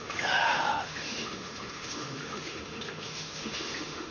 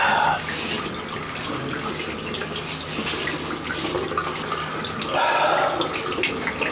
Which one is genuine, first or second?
second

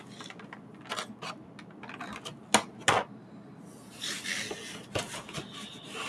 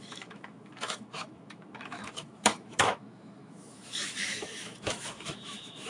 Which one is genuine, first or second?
first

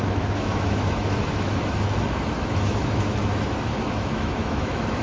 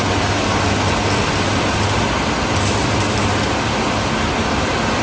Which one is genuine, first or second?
second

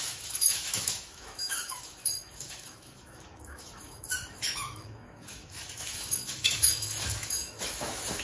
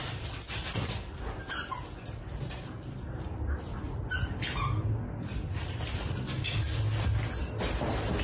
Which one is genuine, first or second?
second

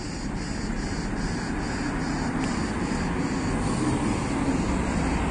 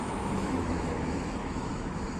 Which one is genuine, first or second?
first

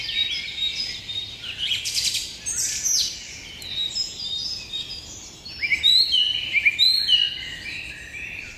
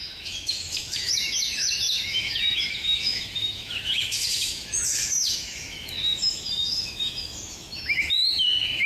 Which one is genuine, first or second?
first